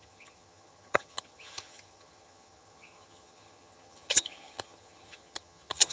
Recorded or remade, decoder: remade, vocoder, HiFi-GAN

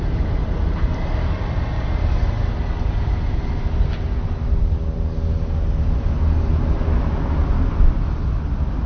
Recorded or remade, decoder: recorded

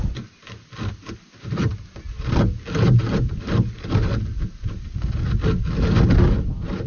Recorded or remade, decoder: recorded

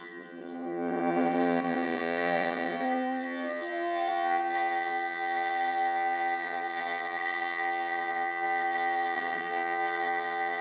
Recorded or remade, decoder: remade, vocoder, HiFi-GAN